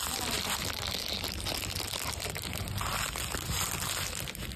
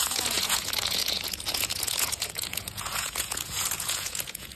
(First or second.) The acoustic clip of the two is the first